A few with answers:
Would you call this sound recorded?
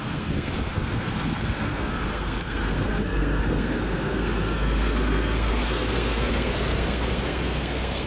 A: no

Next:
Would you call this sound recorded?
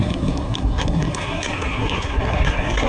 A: no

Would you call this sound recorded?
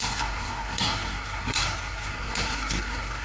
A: no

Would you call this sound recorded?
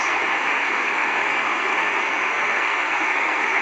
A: no